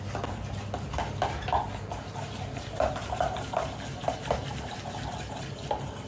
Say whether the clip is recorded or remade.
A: recorded